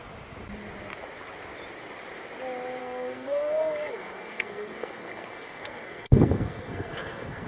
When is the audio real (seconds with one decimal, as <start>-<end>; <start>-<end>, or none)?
0.0-2.8